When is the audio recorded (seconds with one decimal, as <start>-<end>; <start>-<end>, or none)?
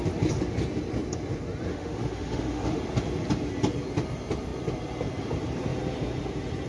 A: 0.0-1.7; 2.8-6.7